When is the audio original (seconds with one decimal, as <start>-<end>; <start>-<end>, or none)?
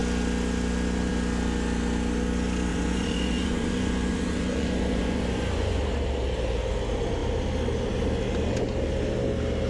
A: 0.0-2.7; 5.8-9.7